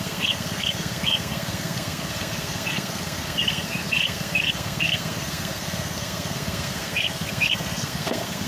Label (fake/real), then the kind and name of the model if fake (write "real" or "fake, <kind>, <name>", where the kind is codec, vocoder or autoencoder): fake, codec, SNAC